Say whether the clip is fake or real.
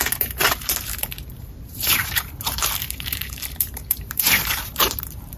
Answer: fake